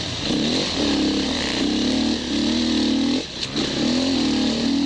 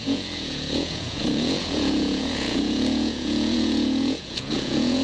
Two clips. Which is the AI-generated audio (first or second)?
second